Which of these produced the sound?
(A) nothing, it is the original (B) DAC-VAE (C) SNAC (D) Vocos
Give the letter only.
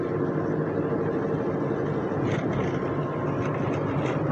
A